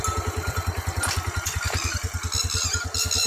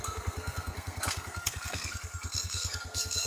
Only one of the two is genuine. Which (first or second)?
first